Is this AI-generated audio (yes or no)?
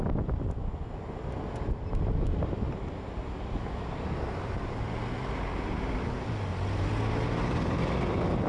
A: no